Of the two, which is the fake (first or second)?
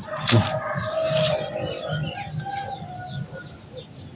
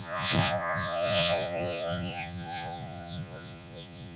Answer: second